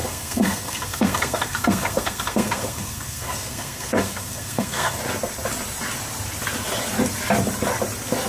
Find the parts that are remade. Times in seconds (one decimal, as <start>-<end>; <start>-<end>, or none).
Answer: 0.0-5.0